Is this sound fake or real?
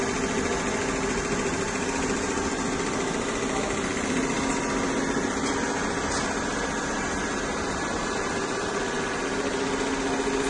real